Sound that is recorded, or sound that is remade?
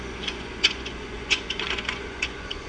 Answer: remade